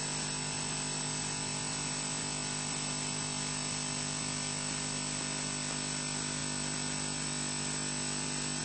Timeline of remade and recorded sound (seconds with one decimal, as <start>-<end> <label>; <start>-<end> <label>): 0.0-8.6 recorded